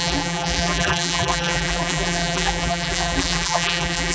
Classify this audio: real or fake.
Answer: fake